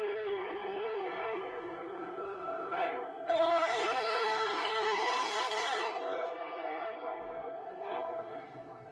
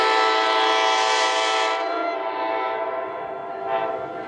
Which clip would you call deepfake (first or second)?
first